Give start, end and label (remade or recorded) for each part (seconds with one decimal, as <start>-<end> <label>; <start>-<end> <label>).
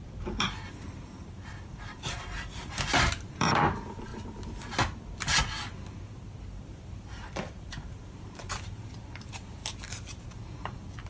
0.0-4.1 remade; 4.1-6.5 recorded; 6.5-9.6 remade; 9.6-10.3 recorded; 10.3-11.1 remade